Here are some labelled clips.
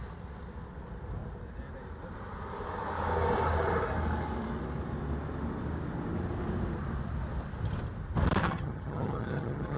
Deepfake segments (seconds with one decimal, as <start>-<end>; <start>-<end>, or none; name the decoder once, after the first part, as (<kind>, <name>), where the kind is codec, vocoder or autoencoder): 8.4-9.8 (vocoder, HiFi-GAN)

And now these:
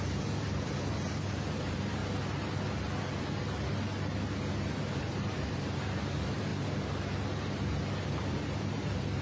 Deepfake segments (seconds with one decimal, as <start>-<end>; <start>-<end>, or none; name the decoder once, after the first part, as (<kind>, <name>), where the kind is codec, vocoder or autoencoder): 0.0-2.0 (vocoder, BigVGAN v2); 4.5-6.5; 8.0-9.2

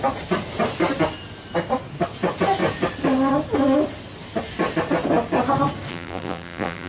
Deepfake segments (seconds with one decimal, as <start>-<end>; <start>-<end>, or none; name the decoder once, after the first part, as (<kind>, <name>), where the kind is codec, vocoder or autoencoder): 5.9-6.9 (vocoder, BigVGAN v2)

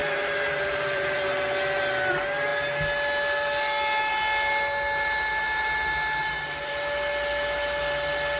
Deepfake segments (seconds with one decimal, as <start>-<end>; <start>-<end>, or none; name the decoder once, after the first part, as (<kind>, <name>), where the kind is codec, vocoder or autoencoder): 0.0-1.3 (vocoder, BigVGAN v2); 6.2-6.7